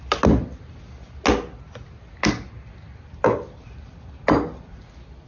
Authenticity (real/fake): real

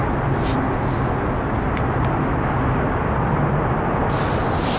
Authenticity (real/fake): real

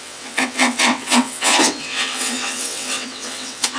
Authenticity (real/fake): fake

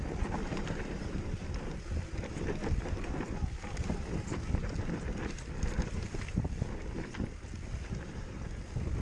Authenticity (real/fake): real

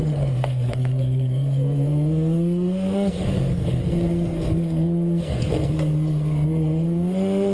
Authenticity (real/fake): fake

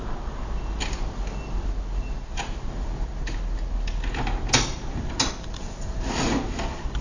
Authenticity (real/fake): real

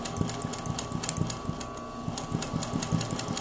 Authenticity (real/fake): real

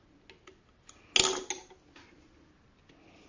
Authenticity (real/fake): real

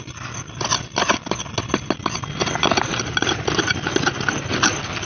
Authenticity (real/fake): real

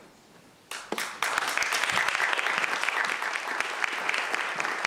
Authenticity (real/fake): real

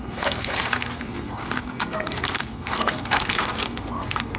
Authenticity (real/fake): fake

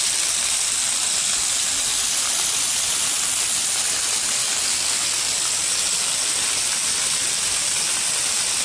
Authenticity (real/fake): real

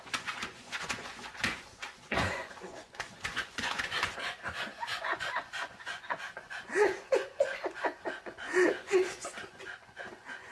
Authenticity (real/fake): fake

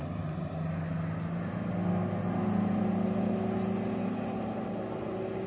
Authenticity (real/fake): real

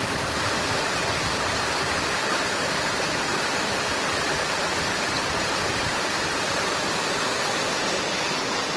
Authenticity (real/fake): real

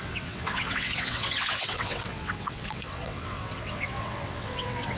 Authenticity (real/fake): fake